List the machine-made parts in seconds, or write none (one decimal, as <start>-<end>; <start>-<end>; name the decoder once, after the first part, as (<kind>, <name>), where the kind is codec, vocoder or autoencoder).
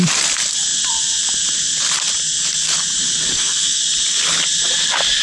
3.3-3.8 (codec, SNAC)